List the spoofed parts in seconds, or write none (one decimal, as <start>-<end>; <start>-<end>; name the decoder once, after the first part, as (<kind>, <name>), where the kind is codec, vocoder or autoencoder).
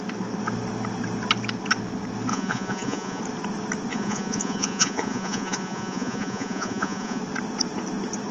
2.3-3.2 (vocoder, Vocos); 3.9-7.2